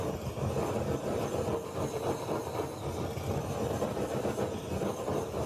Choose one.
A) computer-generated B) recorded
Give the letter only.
B